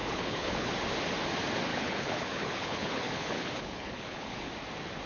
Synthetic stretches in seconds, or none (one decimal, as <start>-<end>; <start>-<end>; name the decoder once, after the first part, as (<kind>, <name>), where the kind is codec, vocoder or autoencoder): 0.0-0.7 (codec, HILCodec); 1.7-4.5